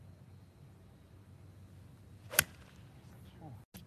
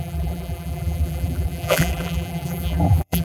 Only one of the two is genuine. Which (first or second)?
first